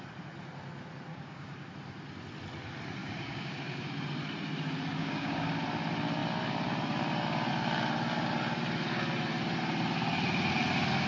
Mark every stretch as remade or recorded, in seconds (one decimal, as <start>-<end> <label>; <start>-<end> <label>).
0.0-1.1 recorded; 1.1-1.7 remade; 1.7-3.0 recorded; 3.0-3.9 remade; 3.9-5.0 recorded; 5.0-5.5 remade; 5.5-11.1 recorded